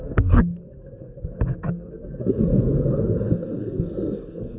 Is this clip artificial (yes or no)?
yes